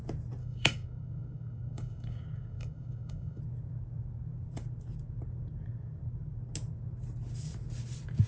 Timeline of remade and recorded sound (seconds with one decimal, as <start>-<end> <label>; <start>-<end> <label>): 0.0-0.4 recorded; 0.4-3.4 remade; 3.4-8.3 recorded